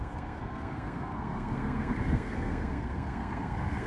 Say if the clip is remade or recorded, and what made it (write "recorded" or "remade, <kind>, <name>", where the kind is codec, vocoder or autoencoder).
remade, codec, SNAC